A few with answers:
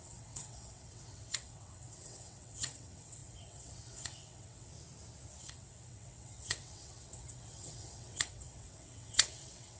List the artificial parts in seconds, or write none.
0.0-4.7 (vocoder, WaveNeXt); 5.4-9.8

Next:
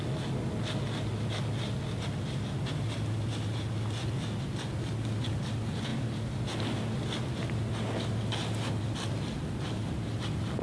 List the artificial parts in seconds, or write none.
none

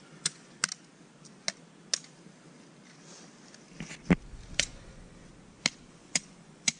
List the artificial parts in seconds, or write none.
0.0-0.6 (vocoder, Vocos); 4.5-5.3; 5.9-6.8